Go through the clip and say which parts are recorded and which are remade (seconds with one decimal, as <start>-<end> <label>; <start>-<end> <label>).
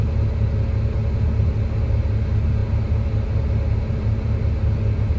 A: 0.0-5.2 recorded